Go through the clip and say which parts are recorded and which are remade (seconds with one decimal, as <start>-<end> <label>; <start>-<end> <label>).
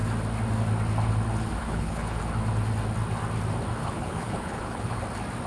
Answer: 0.0-1.6 recorded; 1.6-2.2 remade; 2.2-3.8 recorded; 3.8-5.0 remade; 5.0-5.5 recorded